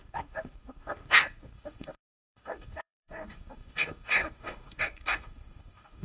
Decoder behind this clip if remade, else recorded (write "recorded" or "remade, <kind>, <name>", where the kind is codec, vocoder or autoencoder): remade, codec, DAC